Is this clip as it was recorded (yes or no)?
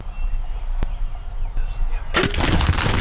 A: yes